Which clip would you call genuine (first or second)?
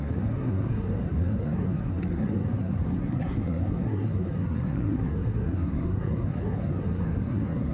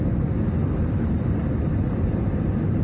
second